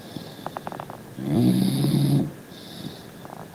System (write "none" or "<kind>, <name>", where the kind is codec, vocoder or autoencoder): none